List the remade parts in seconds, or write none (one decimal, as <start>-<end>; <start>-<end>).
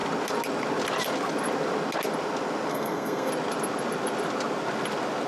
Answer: 2.7-3.3